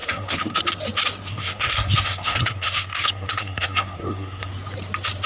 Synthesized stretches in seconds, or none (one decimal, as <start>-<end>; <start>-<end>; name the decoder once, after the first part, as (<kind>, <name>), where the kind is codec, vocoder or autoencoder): 0.0-0.6 (codec, SNAC); 1.3-4.5